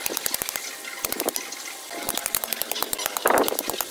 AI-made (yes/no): no